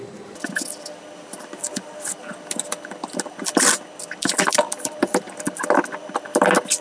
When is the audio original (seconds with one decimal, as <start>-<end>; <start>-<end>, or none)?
0.0-6.8